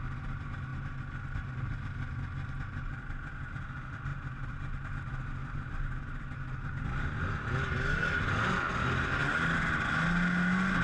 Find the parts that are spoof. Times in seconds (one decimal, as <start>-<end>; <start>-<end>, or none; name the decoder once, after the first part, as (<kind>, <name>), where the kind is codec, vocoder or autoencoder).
4.1-4.9 (vocoder, BigVGAN v2); 5.4-6.0